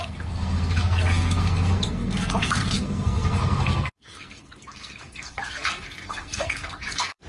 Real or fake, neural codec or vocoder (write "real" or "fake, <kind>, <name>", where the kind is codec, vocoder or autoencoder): fake, codec, SNAC